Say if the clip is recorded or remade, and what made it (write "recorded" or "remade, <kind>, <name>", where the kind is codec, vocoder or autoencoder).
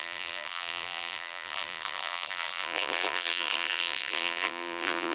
remade, vocoder, BigVGAN v2